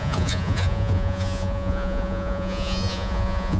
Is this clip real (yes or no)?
no